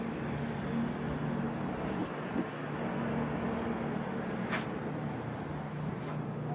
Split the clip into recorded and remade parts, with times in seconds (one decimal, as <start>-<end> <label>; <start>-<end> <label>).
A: 0.0-6.5 recorded